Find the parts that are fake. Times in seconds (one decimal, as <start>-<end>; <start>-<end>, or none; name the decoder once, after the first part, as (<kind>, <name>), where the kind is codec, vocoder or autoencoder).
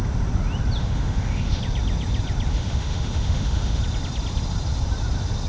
0.8-1.6 (autoencoder, DAC-VAE); 2.5-3.8